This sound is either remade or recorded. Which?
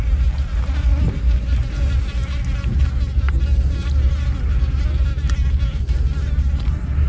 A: recorded